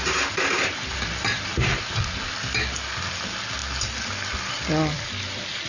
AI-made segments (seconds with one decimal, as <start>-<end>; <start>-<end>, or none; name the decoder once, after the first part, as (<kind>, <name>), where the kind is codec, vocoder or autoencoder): 0.0-1.5 (vocoder, BigVGAN v2)